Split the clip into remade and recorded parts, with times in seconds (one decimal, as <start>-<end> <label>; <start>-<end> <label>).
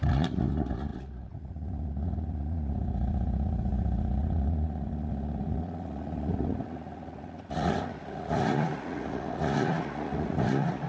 0.0-10.9 remade